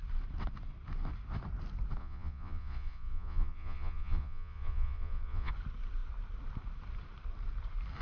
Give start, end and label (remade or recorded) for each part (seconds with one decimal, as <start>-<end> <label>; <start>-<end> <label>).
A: 0.0-2.0 recorded; 2.0-5.5 remade; 5.5-8.0 recorded